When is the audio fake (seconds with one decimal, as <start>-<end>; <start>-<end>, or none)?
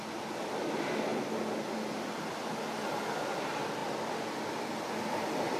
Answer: none